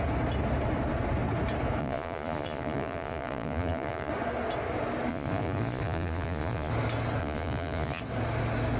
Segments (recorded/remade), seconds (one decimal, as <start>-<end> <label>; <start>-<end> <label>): 0.0-1.8 recorded; 1.8-4.1 remade; 4.1-5.1 recorded; 5.1-6.7 remade; 6.7-7.2 recorded; 7.2-8.0 remade; 8.0-8.8 recorded